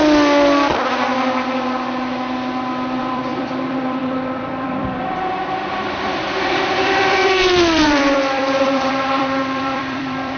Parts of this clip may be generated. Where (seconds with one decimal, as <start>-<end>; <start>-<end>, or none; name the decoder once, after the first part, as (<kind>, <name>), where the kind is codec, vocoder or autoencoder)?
3.0-10.4 (vocoder, BigVGAN v2)